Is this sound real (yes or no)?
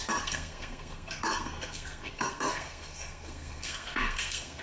no